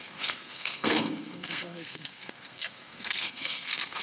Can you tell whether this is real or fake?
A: fake